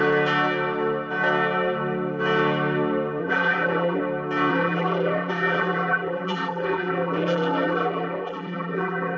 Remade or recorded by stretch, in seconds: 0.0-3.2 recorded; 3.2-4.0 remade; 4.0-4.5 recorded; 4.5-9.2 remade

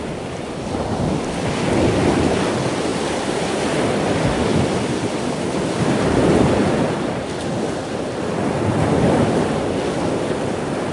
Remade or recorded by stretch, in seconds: 0.0-2.9 recorded; 2.9-3.8 remade; 3.8-4.5 recorded; 4.5-9.7 remade; 9.7-10.9 recorded

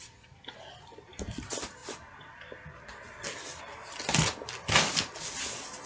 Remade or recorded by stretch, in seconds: 0.0-5.9 recorded